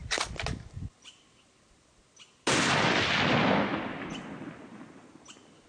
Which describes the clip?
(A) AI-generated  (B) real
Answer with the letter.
B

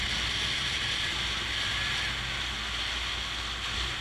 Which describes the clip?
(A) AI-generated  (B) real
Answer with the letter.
B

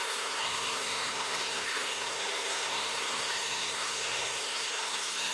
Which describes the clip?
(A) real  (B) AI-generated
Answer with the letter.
B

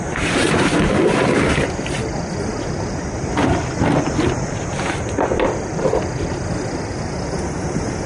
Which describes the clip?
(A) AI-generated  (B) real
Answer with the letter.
B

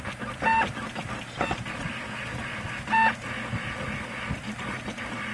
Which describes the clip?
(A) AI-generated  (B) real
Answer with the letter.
B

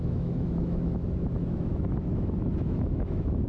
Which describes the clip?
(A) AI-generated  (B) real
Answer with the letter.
A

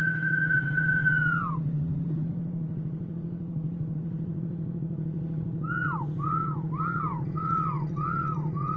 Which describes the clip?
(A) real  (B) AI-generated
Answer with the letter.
B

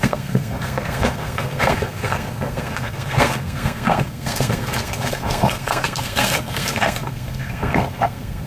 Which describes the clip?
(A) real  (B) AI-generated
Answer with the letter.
B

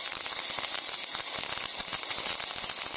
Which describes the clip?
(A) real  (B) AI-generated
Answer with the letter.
A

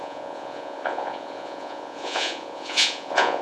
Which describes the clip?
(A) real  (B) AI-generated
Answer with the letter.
B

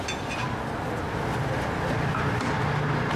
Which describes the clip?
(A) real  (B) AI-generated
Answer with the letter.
A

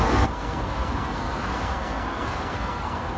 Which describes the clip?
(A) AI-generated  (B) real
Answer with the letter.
A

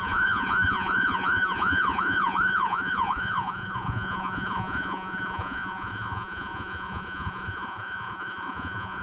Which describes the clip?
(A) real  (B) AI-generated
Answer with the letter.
B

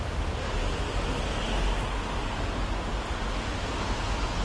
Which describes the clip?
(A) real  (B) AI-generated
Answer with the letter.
A